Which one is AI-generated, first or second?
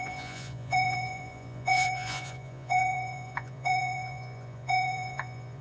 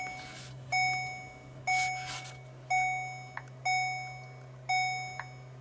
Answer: first